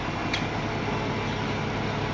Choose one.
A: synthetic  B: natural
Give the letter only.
B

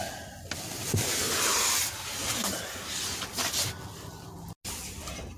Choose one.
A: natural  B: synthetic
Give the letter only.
A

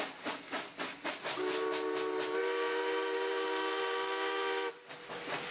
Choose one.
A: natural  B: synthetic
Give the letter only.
A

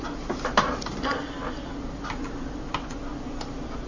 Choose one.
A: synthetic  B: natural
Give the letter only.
B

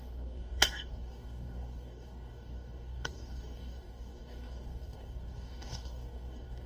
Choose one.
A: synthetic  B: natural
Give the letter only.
A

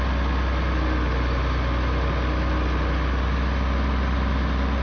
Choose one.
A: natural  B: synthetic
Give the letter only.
A